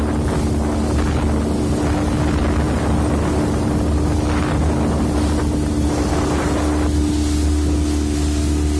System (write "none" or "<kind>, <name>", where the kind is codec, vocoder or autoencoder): none